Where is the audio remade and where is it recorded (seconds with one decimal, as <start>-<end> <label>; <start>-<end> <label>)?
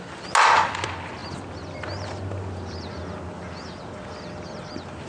0.0-5.1 recorded